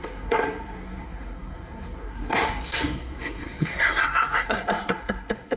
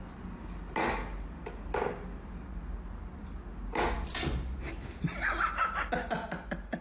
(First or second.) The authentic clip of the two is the second